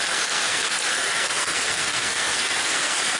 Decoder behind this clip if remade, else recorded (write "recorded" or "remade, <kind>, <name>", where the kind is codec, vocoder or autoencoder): remade, codec, SNAC